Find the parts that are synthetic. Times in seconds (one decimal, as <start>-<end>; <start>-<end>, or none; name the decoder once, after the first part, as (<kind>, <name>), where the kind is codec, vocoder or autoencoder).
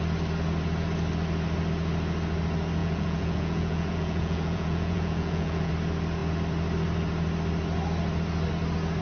2.8-5.7 (vocoder, Vocos)